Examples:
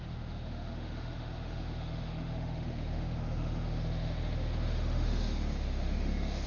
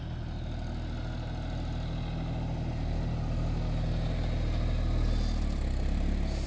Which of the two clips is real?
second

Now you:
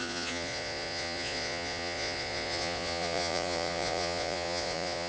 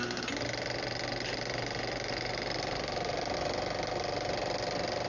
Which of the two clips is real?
second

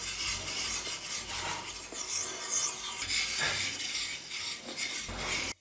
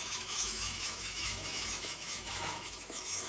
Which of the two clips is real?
first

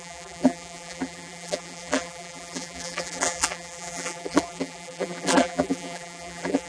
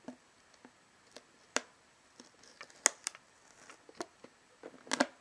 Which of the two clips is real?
second